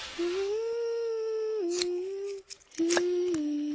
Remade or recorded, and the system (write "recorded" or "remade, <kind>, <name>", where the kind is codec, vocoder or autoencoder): recorded